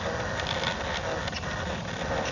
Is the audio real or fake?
real